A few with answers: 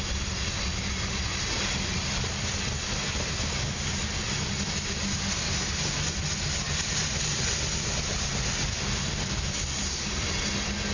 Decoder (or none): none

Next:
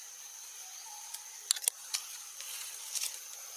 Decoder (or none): none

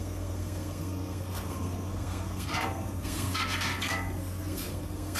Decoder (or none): codec, SNAC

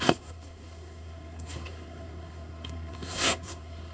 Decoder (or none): codec, SNAC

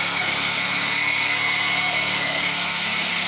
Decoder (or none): codec, SNAC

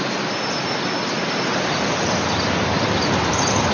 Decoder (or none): none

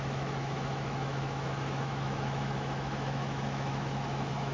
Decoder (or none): autoencoder, DAC-VAE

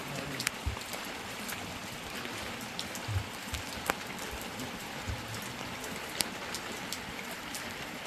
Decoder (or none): vocoder, BigVGAN v2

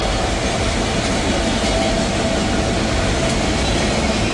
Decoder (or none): none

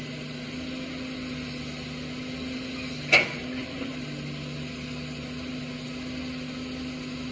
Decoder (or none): none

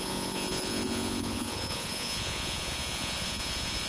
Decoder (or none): vocoder, Vocos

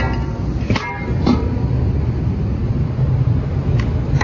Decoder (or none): none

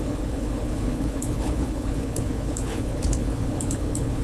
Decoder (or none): codec, HILCodec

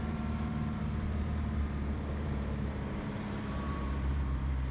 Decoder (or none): vocoder, BigVGAN v2